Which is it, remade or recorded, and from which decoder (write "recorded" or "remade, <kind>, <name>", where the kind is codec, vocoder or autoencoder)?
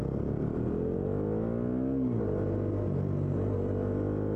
recorded